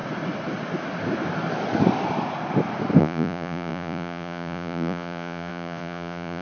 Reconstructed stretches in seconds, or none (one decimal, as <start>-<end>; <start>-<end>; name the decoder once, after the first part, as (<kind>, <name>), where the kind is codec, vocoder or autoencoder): 3.0-6.4 (vocoder, Vocos)